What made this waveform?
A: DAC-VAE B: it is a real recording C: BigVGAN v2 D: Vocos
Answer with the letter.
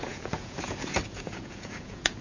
D